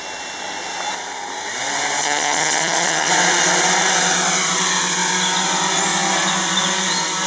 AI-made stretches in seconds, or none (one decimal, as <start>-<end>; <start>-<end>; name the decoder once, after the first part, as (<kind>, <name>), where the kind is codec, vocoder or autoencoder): 2.0-3.1 (vocoder, HiFi-GAN)